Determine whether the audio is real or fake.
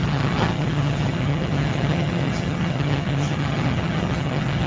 fake